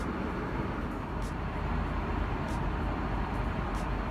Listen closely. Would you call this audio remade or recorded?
recorded